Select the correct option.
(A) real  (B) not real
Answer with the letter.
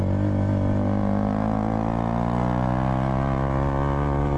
A